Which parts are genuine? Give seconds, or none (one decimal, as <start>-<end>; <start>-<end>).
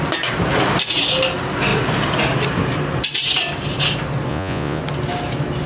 0.0-4.3; 4.8-5.7